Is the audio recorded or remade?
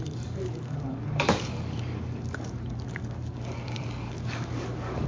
remade